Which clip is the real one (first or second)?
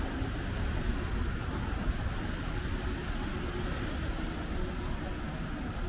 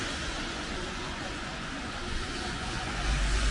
first